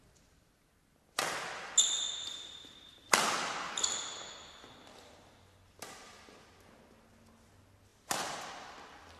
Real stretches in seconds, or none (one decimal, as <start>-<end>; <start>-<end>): 0.0-9.2